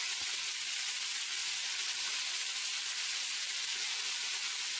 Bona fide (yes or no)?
yes